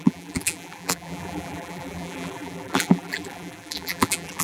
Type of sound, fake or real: fake